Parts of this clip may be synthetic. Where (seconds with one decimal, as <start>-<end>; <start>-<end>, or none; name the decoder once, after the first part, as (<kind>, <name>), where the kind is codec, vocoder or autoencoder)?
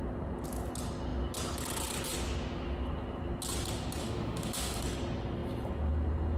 4.0-4.8 (autoencoder, DAC-VAE)